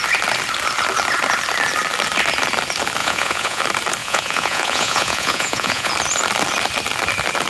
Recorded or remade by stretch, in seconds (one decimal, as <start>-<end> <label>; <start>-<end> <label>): 0.0-3.0 recorded; 3.0-3.6 remade; 3.6-4.0 recorded; 4.0-5.9 remade; 5.9-7.5 recorded